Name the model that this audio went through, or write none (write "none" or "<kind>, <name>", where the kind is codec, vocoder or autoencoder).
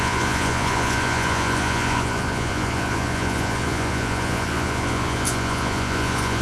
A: vocoder, Vocos